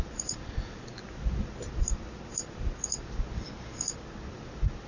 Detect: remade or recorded recorded